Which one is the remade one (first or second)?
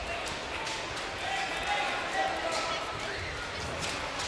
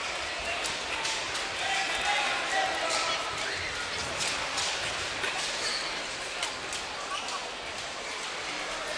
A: second